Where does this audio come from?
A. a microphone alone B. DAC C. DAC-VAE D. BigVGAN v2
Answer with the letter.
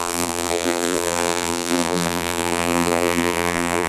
D